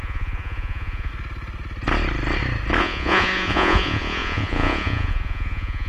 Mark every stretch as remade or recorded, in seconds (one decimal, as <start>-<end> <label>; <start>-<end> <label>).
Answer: 0.0-1.1 remade; 1.1-2.8 recorded; 2.8-5.9 remade